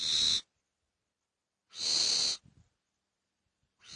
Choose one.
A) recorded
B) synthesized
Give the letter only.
A